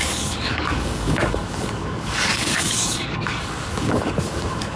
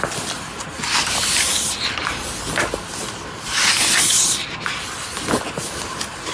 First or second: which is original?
second